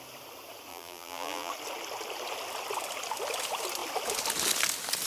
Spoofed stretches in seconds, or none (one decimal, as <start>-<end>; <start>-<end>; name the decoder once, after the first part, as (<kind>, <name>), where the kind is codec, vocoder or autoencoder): 0.7-1.5 (vocoder, BigVGAN v2)